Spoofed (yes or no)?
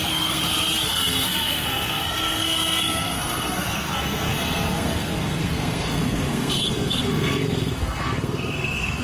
yes